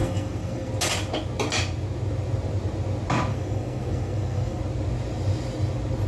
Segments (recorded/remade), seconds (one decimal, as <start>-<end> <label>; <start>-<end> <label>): 0.0-0.7 remade; 0.7-3.3 recorded; 3.3-4.6 remade; 4.6-6.1 recorded

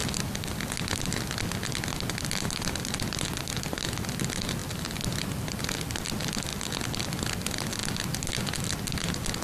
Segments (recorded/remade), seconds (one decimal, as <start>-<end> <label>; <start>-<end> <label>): 0.0-4.6 recorded; 4.6-5.6 remade; 5.6-9.4 recorded

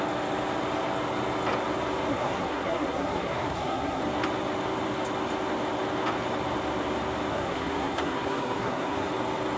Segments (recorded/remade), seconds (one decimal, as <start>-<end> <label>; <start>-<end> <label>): 0.0-2.1 recorded; 2.1-4.0 remade; 4.0-7.3 recorded; 7.3-9.1 remade; 9.1-9.6 recorded

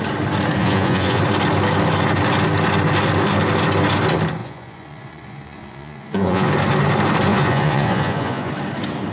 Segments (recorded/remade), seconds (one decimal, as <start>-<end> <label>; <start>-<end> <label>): 0.0-0.6 recorded; 0.6-1.2 remade; 1.2-4.4 recorded; 4.4-6.5 remade; 6.5-7.3 recorded; 7.3-8.5 remade; 8.5-9.1 recorded

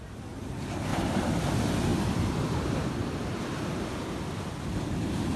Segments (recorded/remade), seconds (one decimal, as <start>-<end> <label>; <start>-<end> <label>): 0.0-0.9 recorded; 0.9-1.5 remade; 1.5-1.9 recorded; 1.9-4.6 remade; 4.6-5.4 recorded